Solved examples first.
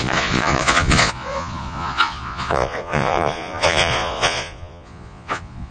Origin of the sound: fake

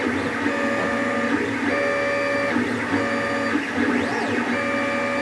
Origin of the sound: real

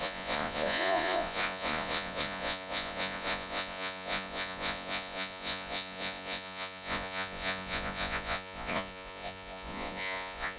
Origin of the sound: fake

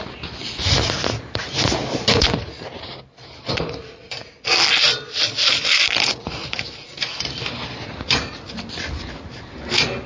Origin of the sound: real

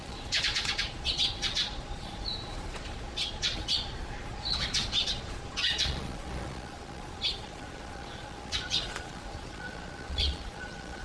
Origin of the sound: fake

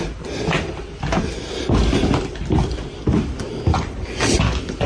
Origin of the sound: real